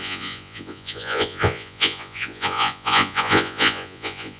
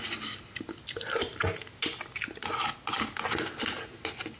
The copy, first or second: first